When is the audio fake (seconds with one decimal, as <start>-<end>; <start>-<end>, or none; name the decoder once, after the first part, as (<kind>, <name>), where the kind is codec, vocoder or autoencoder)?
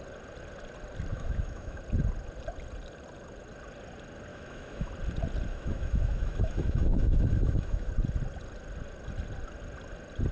1.1-1.8 (autoencoder, DAC-VAE); 4.3-4.9; 5.5-7.9